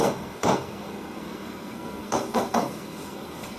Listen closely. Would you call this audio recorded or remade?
remade